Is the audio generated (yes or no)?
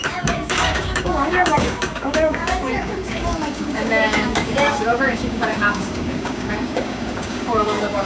yes